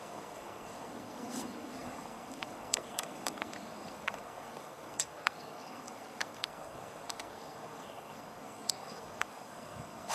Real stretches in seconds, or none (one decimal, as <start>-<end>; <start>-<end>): none